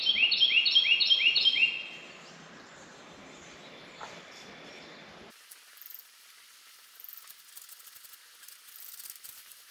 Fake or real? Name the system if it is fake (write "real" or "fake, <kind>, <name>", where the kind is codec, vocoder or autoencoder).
real